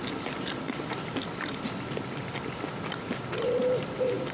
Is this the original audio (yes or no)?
yes